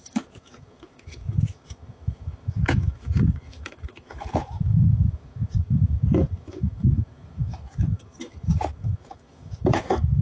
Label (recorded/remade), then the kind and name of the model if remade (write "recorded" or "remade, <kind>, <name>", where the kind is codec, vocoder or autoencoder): remade, autoencoder, DAC-VAE